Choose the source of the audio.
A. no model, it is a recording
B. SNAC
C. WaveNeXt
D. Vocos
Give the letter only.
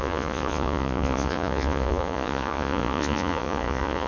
D